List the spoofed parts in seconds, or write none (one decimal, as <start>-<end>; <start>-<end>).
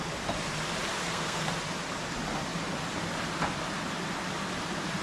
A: 1.0-1.5